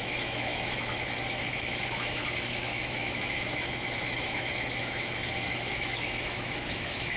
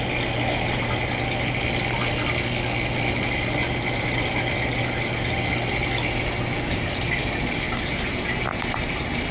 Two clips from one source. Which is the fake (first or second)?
first